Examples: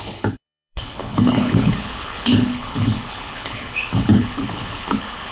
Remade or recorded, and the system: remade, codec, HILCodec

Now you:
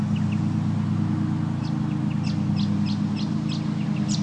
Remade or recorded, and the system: recorded